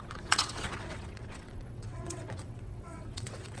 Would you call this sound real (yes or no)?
no